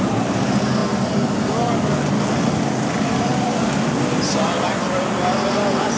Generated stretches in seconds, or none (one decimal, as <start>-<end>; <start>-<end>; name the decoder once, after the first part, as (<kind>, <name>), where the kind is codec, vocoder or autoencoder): none